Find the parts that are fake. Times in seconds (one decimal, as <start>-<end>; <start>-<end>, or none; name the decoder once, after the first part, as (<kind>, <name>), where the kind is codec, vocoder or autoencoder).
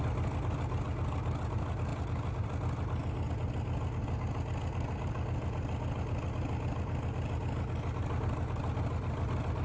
none